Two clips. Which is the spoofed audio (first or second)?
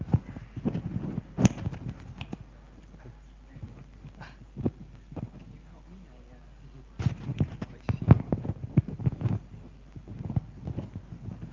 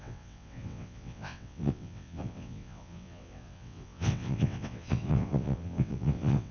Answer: second